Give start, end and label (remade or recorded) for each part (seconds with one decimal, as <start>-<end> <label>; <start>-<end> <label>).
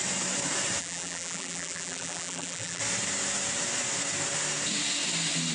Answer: 0.0-0.8 recorded; 0.8-2.8 remade; 2.8-5.5 recorded